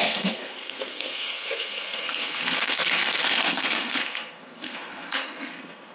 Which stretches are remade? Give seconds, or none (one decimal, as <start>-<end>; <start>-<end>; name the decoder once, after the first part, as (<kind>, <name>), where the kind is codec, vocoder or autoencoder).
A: 0.0-5.9 (codec, SNAC)